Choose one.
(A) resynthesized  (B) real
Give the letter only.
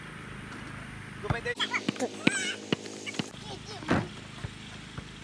B